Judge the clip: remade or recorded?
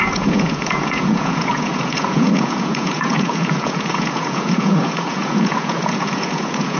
remade